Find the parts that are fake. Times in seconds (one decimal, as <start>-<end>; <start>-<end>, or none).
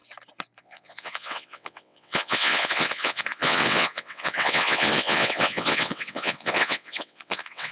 0.6-7.7